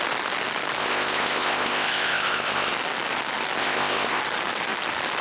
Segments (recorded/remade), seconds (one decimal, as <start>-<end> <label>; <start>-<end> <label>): 0.0-0.8 recorded; 0.8-2.7 remade; 2.7-3.6 recorded; 3.6-4.2 remade; 4.2-5.2 recorded